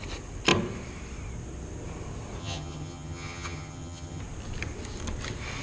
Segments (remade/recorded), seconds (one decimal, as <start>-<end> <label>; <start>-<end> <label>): 0.0-2.4 recorded; 2.4-4.2 remade; 4.2-5.6 recorded